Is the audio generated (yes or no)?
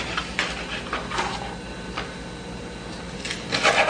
no